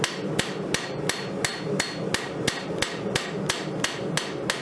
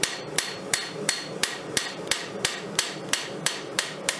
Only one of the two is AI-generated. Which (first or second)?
second